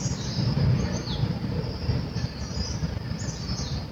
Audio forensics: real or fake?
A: real